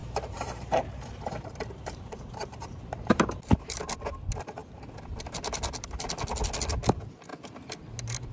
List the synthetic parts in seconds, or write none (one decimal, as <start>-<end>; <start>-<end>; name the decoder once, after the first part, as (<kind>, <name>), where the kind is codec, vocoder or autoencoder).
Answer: 0.0-3.9 (vocoder, BigVGAN v2)